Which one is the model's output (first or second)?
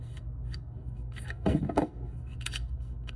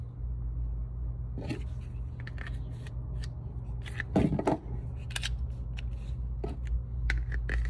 first